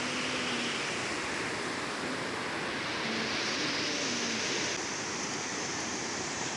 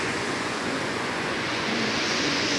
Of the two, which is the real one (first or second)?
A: first